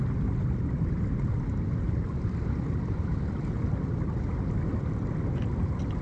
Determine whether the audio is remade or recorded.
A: recorded